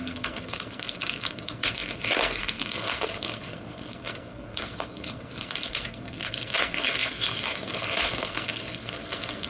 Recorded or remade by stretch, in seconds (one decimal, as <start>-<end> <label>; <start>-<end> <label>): 0.0-9.5 remade